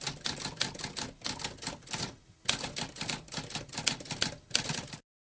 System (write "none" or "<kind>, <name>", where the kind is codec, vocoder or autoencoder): none